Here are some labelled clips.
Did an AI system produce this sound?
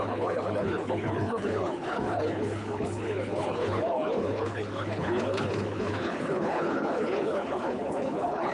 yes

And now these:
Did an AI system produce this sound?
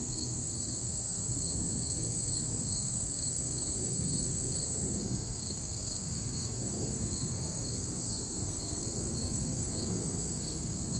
yes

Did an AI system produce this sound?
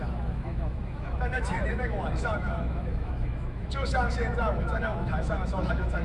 yes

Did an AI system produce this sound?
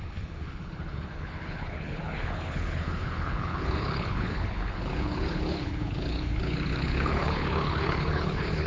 yes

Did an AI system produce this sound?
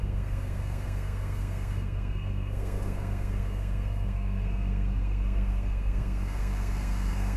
yes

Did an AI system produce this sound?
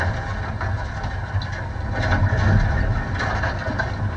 no